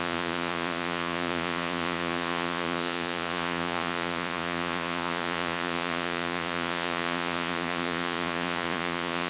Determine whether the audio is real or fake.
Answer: fake